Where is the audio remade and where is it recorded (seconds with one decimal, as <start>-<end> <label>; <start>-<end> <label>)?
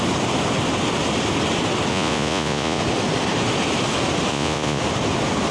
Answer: 0.0-1.9 recorded; 1.9-2.8 remade; 2.8-4.3 recorded; 4.3-4.8 remade; 4.8-5.5 recorded